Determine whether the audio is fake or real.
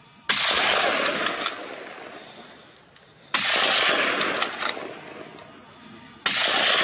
real